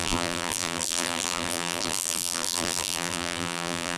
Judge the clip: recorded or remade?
remade